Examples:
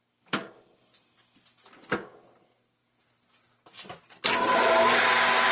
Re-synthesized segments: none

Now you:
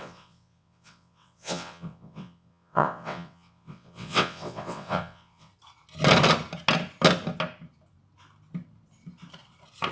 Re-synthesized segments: 0.0-5.5 (vocoder, WaveNeXt)

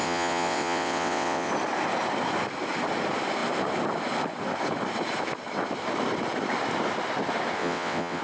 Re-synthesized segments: 0.0-1.5 (vocoder, WaveNeXt); 7.6-8.2

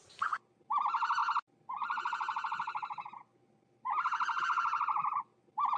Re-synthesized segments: none

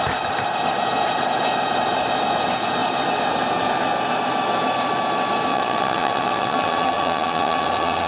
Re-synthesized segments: 5.5-8.1 (vocoder, WaveNeXt)

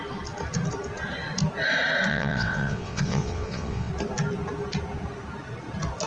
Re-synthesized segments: 2.1-3.9 (vocoder, WaveNeXt)

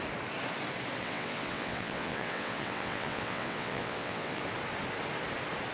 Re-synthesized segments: 1.0-4.4 (vocoder, WaveNeXt)